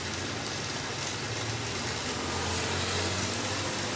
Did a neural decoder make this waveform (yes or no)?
no